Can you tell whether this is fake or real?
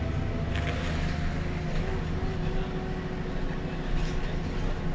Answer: real